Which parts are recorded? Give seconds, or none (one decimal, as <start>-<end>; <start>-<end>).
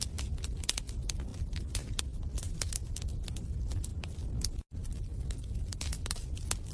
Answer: 0.0-6.7